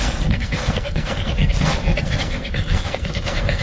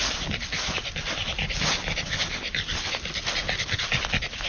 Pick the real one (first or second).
second